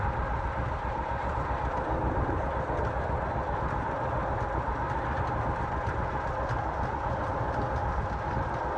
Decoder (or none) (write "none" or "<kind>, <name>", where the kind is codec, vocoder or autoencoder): none